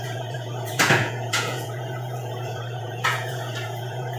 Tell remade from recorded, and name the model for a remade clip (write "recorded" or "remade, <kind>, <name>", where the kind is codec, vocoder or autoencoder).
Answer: remade, vocoder, Vocos